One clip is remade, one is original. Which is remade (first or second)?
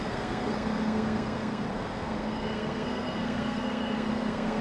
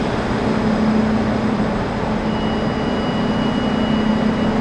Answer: first